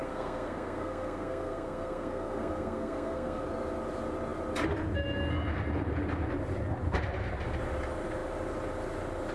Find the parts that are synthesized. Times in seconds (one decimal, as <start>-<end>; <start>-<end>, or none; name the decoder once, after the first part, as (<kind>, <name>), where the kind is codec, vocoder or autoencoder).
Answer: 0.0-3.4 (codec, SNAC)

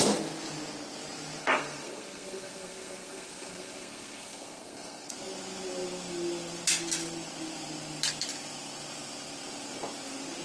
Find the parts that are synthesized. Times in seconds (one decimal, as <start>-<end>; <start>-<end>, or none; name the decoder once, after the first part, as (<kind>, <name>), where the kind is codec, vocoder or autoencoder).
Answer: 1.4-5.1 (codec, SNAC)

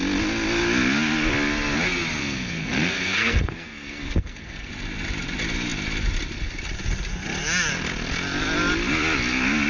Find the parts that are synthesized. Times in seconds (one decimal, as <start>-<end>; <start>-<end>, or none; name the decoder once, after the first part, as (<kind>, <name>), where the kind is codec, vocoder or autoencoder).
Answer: 2.2-4.7 (codec, SNAC)

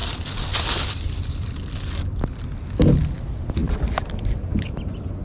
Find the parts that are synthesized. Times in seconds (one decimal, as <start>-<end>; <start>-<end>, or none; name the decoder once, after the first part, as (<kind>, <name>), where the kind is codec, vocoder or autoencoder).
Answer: none

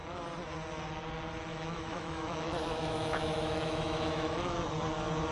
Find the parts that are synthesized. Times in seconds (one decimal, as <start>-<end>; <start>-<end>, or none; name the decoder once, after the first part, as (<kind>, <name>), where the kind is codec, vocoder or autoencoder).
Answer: 1.5-4.7 (autoencoder, DAC-VAE)

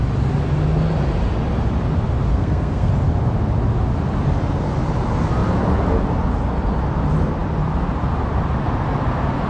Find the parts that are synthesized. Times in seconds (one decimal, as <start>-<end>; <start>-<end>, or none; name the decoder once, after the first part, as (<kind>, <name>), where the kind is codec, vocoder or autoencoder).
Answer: 2.3-2.9 (codec, SNAC)